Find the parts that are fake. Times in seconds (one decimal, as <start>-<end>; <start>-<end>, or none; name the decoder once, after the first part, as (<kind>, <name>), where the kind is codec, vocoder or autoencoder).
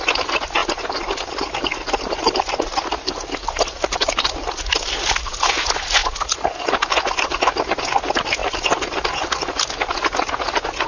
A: 0.6-2.5 (vocoder, BigVGAN v2); 2.9-4.9; 6.0-7.8; 8.4-9.6